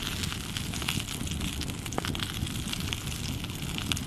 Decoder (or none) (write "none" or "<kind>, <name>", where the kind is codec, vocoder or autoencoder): none